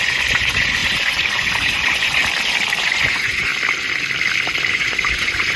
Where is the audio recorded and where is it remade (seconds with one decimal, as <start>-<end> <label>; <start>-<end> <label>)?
0.0-2.2 remade; 2.2-2.8 recorded; 2.8-3.5 remade; 3.5-4.7 recorded; 4.7-5.6 remade